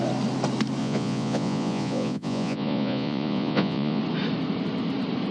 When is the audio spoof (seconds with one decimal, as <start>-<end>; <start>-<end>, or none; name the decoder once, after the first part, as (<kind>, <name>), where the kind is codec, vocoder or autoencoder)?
0.8-4.0 (vocoder, Vocos)